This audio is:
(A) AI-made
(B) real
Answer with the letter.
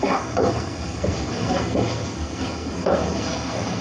A